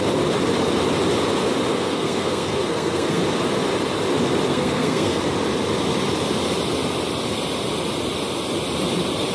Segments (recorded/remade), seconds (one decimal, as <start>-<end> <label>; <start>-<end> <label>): 0.0-1.7 recorded; 1.7-3.2 remade; 3.2-4.5 recorded; 4.5-5.2 remade; 5.2-9.3 recorded